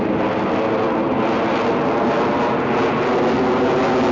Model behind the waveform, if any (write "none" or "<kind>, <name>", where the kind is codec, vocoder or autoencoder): none